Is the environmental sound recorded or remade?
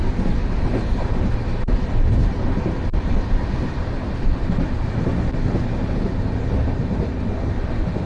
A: recorded